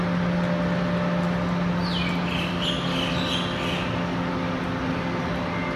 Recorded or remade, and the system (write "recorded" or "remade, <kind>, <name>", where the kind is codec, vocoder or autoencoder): recorded